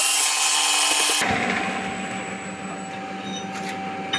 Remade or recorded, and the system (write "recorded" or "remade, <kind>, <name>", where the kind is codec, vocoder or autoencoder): recorded